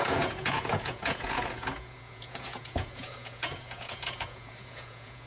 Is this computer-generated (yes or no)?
yes